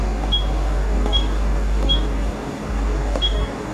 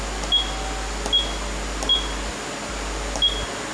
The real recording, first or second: second